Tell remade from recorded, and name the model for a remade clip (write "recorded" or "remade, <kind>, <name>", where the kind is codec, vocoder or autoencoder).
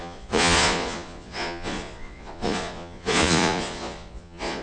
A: remade, vocoder, Vocos